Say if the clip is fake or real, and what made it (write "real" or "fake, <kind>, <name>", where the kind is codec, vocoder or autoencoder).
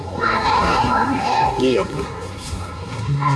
fake, codec, SNAC